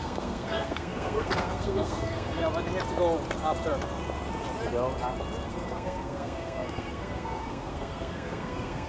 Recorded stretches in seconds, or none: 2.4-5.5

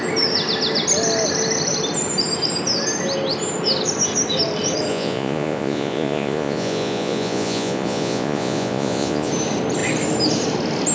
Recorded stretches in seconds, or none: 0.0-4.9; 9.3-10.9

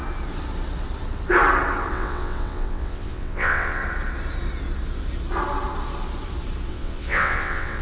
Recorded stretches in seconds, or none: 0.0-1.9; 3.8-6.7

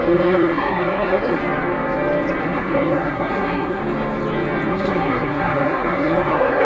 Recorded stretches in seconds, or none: 1.4-2.4; 3.8-4.7